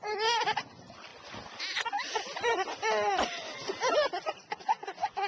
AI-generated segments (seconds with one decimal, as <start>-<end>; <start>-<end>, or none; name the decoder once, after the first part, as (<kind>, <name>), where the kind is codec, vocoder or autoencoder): none